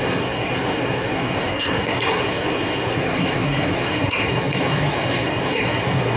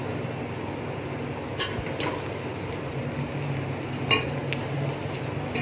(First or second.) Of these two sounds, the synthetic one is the first